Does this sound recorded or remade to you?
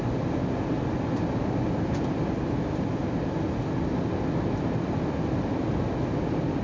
recorded